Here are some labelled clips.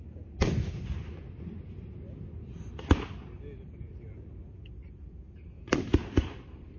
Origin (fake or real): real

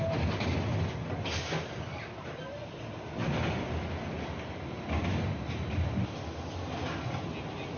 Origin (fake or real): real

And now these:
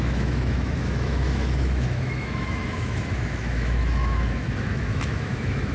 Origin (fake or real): fake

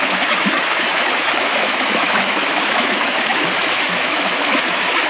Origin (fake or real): fake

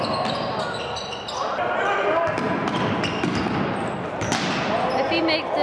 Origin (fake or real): real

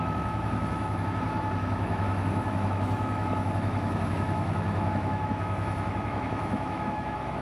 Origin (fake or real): fake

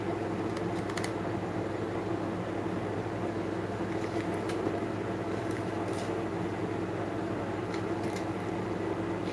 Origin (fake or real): real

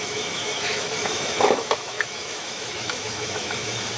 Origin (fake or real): fake